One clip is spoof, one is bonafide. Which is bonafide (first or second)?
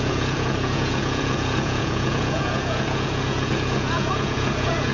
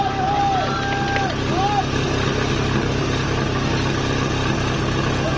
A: second